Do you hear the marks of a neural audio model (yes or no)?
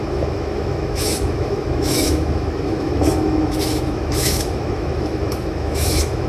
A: yes